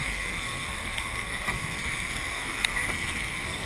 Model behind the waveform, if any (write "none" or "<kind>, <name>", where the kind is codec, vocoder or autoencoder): codec, SNAC